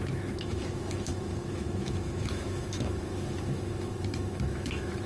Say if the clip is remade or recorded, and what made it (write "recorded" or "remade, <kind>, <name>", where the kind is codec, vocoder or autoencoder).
remade, autoencoder, DAC-VAE